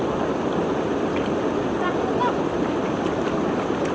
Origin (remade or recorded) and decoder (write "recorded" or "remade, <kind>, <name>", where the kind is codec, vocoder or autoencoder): recorded